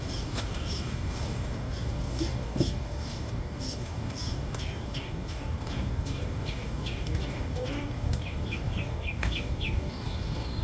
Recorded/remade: remade